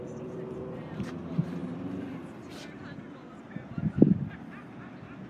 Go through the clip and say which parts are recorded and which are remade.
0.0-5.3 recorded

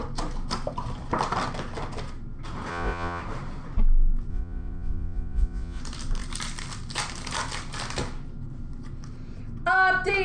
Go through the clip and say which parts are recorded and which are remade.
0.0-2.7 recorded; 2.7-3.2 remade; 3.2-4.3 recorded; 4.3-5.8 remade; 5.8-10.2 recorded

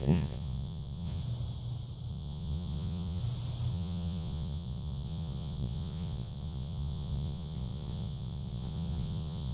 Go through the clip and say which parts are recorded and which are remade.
0.0-1.2 remade; 1.2-2.1 recorded; 2.1-3.2 remade; 3.2-3.7 recorded; 3.7-9.5 remade

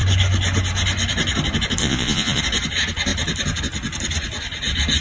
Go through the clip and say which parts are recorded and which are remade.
0.0-1.8 recorded; 1.8-2.4 remade; 2.4-5.0 recorded

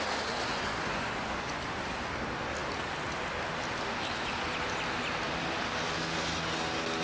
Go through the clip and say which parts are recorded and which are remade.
0.0-0.5 recorded; 0.5-1.6 remade; 1.6-7.0 recorded

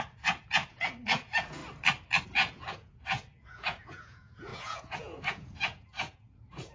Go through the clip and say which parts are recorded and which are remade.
0.0-1.6 remade; 1.6-2.2 recorded; 2.2-6.7 remade